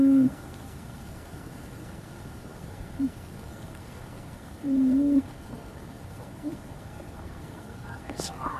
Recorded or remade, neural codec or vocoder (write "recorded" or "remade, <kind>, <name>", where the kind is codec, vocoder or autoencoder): remade, codec, SNAC